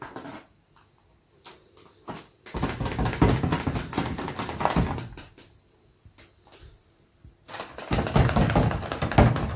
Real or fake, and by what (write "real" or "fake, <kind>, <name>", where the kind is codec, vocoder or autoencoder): real